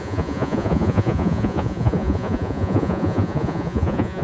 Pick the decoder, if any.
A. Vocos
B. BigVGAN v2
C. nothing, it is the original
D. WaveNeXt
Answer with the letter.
A